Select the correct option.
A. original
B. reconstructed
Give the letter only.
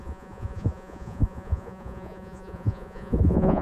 B